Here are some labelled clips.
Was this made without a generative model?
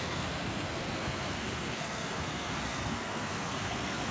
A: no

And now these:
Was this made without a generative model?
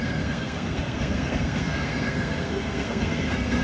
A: no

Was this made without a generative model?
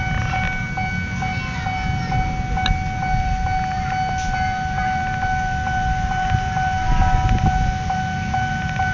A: yes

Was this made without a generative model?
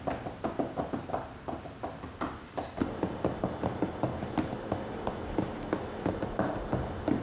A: yes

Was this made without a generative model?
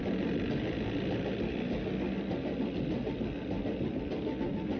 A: yes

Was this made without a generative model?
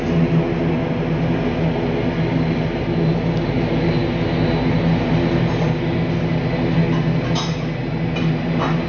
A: yes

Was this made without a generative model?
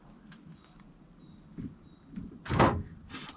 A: yes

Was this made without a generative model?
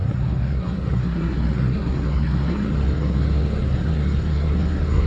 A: no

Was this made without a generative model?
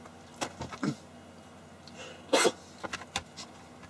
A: yes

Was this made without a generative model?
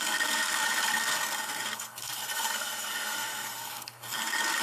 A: no